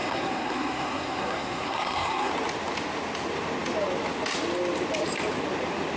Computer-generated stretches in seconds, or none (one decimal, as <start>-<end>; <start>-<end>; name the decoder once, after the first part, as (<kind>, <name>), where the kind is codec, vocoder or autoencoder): 0.0-2.3 (codec, SNAC)